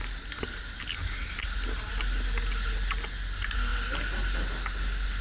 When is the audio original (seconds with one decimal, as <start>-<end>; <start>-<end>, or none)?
0.0-5.2